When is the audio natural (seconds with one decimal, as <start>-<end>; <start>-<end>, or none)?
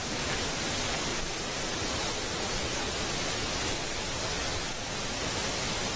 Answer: 0.0-1.1; 2.6-6.0